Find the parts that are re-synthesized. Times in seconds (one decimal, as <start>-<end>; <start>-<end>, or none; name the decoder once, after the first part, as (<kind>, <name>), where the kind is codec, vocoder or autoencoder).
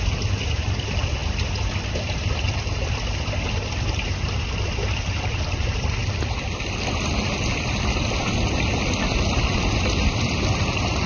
0.0-1.2 (vocoder, BigVGAN v2); 1.8-11.1